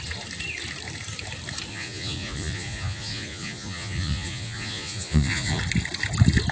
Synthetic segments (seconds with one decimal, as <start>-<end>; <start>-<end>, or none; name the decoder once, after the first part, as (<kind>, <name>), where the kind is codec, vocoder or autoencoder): 1.7-5.6 (vocoder, Vocos)